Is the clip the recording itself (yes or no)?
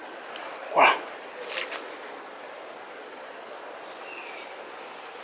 yes